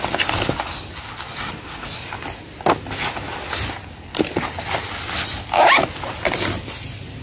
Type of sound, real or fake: real